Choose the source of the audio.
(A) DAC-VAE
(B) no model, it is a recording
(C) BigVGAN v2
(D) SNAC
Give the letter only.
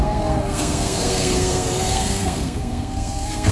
D